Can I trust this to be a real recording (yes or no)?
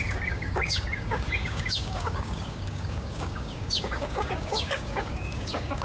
no